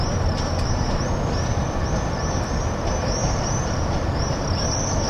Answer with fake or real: real